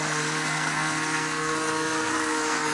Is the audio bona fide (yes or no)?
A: no